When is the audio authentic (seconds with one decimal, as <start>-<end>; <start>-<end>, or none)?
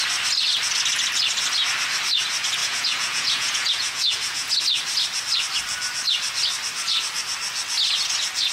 0.0-2.6; 4.6-8.5